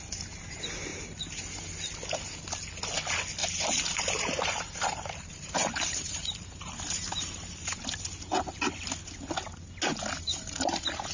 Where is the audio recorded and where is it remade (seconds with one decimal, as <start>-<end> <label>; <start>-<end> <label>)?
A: 0.0-0.9 recorded; 0.9-1.6 remade; 1.6-3.4 recorded; 3.4-7.8 remade; 7.8-10.3 recorded; 10.3-11.1 remade